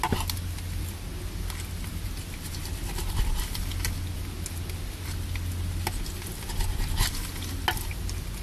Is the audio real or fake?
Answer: real